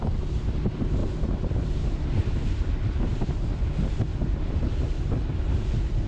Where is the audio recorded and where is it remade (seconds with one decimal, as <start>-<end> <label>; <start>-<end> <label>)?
0.0-1.0 recorded; 1.0-2.6 remade; 2.6-4.1 recorded; 4.1-4.8 remade; 4.8-6.1 recorded